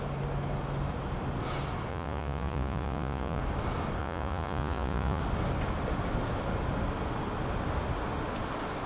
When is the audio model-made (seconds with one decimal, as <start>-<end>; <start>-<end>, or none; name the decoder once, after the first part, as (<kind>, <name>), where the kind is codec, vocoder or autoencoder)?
1.9-3.4 (vocoder, Vocos); 4.0-5.2